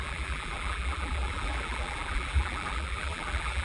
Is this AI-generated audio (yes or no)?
yes